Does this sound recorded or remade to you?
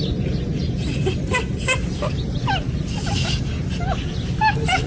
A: recorded